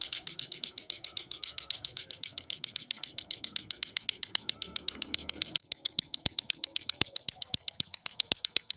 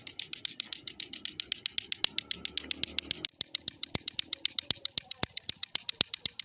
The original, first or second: second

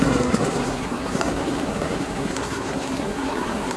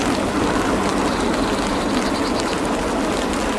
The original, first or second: second